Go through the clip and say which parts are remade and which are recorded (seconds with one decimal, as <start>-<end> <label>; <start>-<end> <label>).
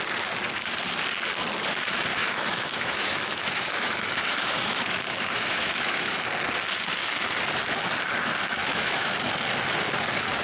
0.0-2.1 recorded; 2.1-6.2 remade; 6.2-8.6 recorded; 8.6-9.1 remade; 9.1-10.4 recorded